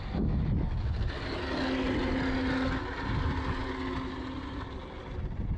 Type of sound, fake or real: real